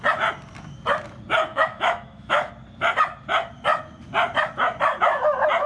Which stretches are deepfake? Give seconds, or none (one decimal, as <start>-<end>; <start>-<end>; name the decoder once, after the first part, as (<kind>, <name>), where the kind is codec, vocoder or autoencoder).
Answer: 1.5-2.5 (autoencoder, DAC-VAE)